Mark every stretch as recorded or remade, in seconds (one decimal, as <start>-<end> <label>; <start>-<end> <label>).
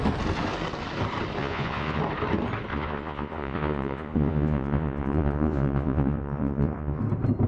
0.0-1.4 recorded; 1.4-2.0 remade; 2.0-2.7 recorded; 2.7-7.0 remade; 7.0-7.5 recorded